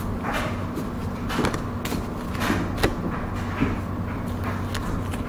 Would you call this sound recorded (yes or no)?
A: yes